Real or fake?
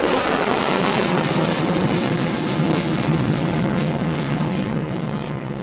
fake